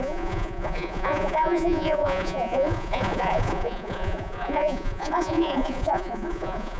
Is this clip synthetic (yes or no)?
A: yes